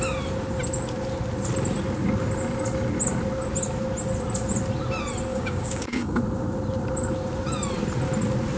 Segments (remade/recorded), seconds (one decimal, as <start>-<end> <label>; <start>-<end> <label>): 0.0-5.3 recorded; 5.3-6.2 remade; 6.2-8.6 recorded